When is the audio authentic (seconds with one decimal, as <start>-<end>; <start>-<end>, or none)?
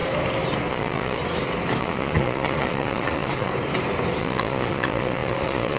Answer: 0.0-0.7; 1.2-1.8; 3.5-4.2